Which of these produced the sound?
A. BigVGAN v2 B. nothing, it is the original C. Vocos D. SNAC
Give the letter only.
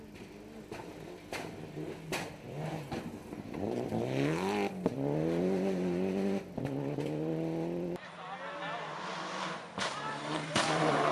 B